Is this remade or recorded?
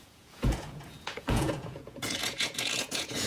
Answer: remade